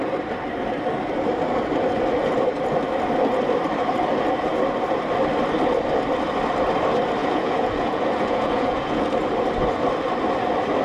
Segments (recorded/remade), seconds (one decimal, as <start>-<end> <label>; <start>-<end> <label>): 0.0-7.2 recorded; 7.2-9.0 remade; 9.0-10.8 recorded